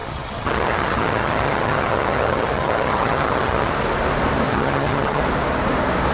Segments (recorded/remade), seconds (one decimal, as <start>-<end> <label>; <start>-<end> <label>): 0.0-3.7 remade; 3.7-4.5 recorded; 4.5-5.2 remade; 5.2-6.1 recorded